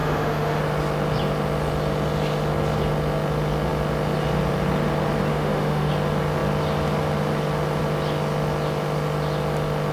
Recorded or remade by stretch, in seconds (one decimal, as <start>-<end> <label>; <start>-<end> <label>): 0.0-0.6 remade; 0.6-5.3 recorded; 5.3-5.9 remade; 5.9-9.9 recorded